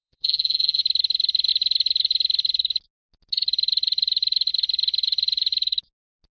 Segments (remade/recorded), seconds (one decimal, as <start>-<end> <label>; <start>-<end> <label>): 0.0-0.8 remade; 0.8-6.3 recorded